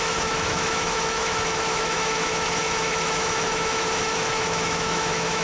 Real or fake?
fake